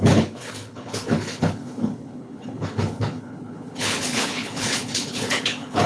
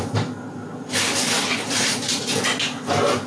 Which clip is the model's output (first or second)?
first